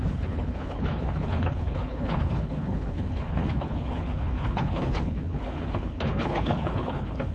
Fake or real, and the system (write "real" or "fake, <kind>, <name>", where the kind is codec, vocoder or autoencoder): fake, codec, HILCodec